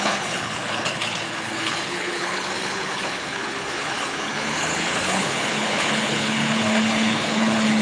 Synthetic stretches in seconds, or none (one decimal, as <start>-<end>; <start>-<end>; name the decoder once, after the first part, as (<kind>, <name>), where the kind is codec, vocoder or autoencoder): 0.0-7.8 (codec, HILCodec)